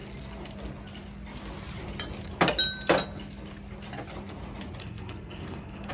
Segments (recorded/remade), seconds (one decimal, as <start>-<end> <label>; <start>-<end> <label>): 0.0-4.8 recorded; 4.8-5.9 remade